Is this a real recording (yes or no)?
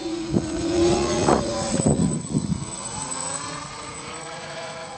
no